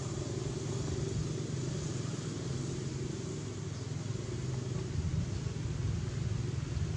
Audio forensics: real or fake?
real